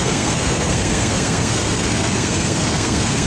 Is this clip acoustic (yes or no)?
no